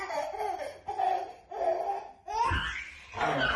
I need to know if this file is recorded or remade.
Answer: recorded